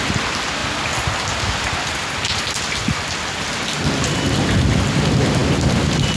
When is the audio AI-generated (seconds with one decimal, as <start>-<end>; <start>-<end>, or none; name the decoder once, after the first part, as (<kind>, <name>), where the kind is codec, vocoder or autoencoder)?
0.6-2.8 (vocoder, BigVGAN v2); 5.4-6.2